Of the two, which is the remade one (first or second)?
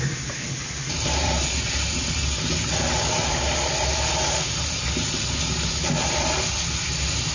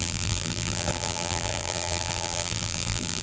second